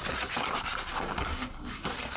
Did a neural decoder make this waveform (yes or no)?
no